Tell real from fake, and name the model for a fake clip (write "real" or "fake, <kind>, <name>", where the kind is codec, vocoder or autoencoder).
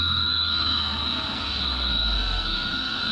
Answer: fake, codec, SNAC